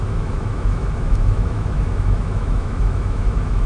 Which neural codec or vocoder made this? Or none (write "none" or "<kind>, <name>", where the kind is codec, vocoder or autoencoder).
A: autoencoder, DAC-VAE